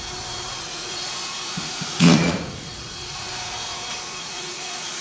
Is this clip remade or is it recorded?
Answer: remade